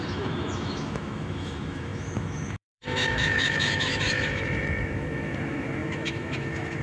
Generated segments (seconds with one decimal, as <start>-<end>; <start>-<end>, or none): 0.0-6.8